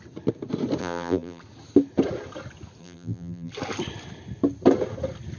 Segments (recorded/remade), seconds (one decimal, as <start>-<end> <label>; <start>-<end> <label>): 0.0-0.8 recorded; 0.8-1.4 remade; 1.4-2.8 recorded; 2.8-3.5 remade; 3.5-5.4 recorded